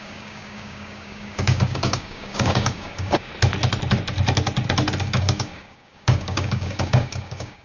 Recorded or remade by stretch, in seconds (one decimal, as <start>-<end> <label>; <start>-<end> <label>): 0.0-3.3 remade; 3.3-5.0 recorded; 5.0-7.6 remade